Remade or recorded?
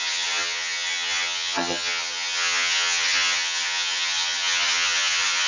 remade